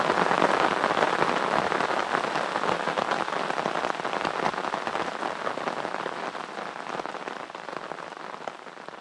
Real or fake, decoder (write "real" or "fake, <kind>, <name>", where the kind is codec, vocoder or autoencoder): real